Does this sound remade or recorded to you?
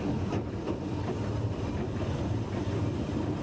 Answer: recorded